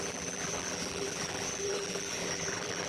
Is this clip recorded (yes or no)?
no